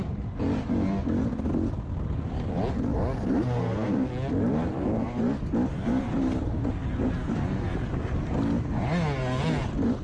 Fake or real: real